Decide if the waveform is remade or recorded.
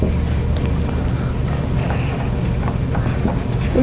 recorded